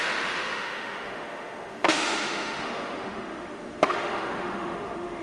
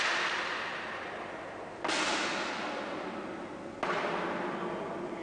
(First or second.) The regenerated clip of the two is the first